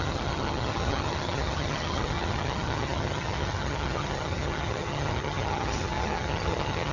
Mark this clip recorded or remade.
remade